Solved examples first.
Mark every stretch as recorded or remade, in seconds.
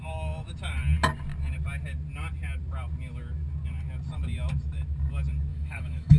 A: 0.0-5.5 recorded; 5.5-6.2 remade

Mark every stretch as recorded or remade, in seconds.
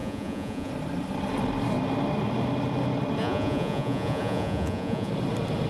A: 0.0-0.7 remade; 0.7-3.2 recorded; 3.2-5.1 remade; 5.1-5.7 recorded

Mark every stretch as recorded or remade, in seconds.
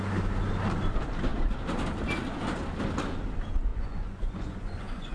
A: 0.0-3.7 recorded; 3.7-5.1 remade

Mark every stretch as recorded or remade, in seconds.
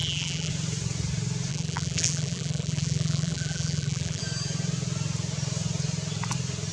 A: 0.0-0.5 remade; 0.5-1.5 recorded; 1.5-4.2 remade; 4.2-6.7 recorded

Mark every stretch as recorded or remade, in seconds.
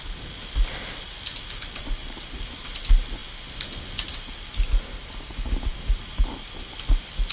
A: 0.0-7.3 recorded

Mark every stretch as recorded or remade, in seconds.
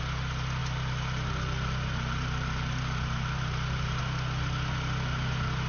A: 0.0-0.6 recorded; 0.6-4.0 remade; 4.0-5.7 recorded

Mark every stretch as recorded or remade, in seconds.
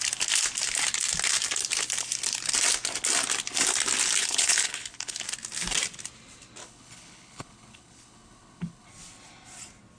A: 0.0-4.2 recorded; 4.2-5.2 remade; 5.2-6.6 recorded; 6.6-8.9 remade; 8.9-10.0 recorded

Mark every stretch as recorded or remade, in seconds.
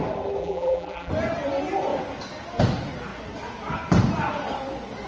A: 0.0-0.4 recorded; 0.4-1.1 remade; 1.1-5.1 recorded